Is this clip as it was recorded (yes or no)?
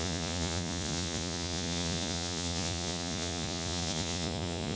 no